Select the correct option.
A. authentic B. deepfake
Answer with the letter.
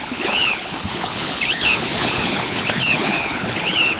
B